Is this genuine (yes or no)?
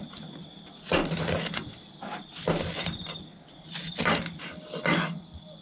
yes